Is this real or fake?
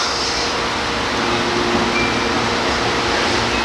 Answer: real